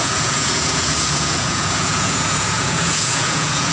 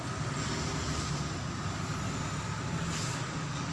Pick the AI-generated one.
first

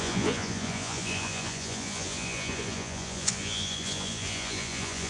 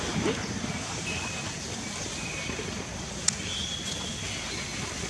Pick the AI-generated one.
first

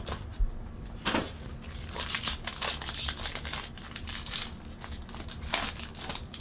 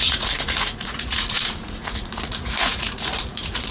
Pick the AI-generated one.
second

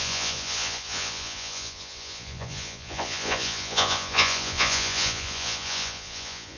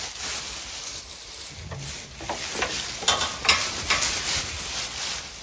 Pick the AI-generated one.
first